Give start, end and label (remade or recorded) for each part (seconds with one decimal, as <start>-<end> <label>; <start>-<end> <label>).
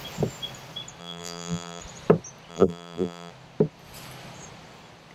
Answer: 0.0-1.0 recorded; 1.0-1.8 remade; 1.8-2.5 recorded; 2.5-3.3 remade; 3.3-5.1 recorded